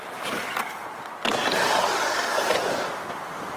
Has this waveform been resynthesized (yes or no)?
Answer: no